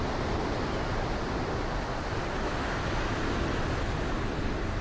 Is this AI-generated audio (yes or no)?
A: no